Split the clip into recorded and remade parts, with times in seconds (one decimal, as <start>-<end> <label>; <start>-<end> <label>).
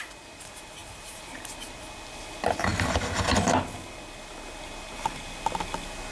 0.0-6.1 recorded